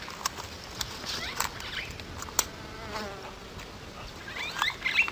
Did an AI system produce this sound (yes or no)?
no